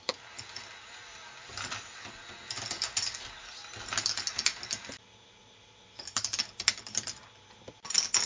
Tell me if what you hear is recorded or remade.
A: recorded